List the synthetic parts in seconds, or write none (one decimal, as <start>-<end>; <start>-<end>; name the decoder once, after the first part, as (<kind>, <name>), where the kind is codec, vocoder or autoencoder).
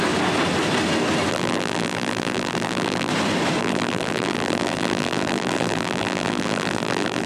1.3-3.1 (vocoder, BigVGAN v2); 3.6-7.3